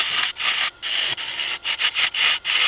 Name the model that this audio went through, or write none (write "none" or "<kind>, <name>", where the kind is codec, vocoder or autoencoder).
none